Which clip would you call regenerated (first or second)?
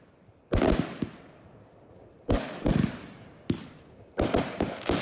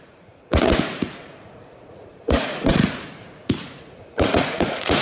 second